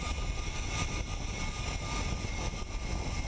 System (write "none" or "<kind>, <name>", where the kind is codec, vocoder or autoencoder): none